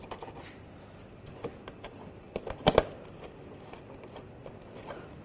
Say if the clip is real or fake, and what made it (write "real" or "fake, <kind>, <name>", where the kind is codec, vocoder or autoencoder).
real